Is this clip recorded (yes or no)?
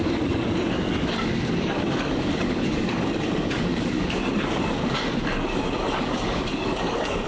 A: no